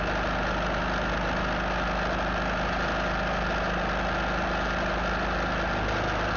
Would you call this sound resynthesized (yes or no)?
no